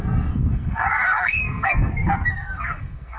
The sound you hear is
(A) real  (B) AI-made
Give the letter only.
B